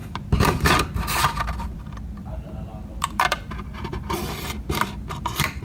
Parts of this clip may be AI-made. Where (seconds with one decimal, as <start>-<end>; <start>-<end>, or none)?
0.0-1.8; 2.2-5.6